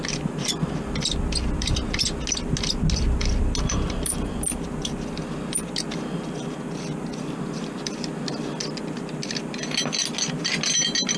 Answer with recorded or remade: recorded